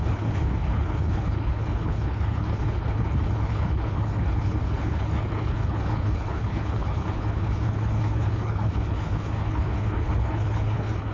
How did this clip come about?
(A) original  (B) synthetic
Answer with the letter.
B